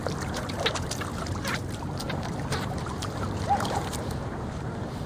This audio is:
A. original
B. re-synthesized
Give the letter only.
B